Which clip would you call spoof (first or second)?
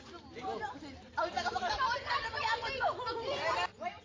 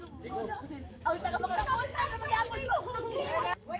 second